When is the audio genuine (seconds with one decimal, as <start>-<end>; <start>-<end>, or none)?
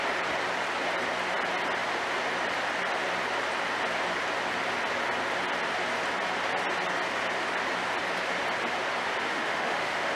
0.0-9.3